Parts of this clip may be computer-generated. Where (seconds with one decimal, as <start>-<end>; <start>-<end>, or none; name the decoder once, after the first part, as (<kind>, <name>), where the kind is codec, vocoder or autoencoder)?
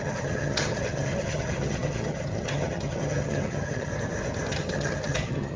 0.0-3.9 (vocoder, HiFi-GAN); 4.5-5.6